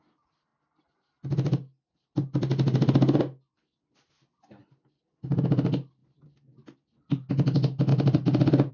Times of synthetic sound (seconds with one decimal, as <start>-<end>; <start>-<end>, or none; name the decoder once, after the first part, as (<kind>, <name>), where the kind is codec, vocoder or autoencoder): 6.0-7.3 (vocoder, BigVGAN v2); 7.9-8.7